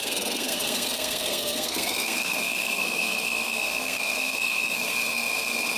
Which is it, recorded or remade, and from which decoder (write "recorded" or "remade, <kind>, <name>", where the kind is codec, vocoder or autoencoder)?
remade, codec, SNAC